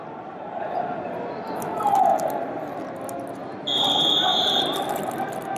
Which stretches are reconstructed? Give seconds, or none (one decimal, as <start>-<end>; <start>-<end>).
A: 0.0-0.7; 2.1-3.0; 3.4-4.1